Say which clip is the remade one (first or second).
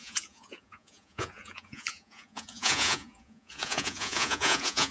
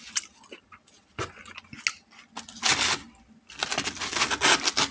first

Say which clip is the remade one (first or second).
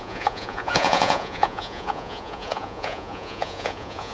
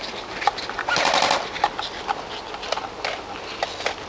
first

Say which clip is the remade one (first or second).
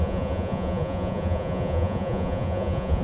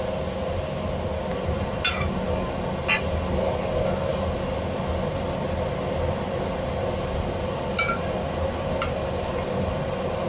first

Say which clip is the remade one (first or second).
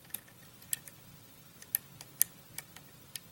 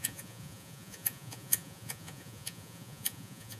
second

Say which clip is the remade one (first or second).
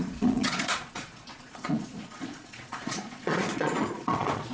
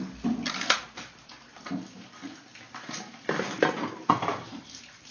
first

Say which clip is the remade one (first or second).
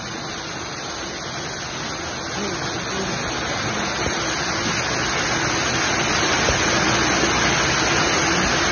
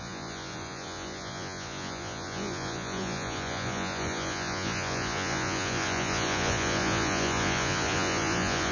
second